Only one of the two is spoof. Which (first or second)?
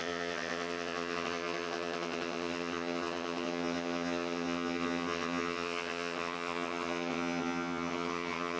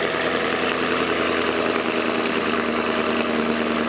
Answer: first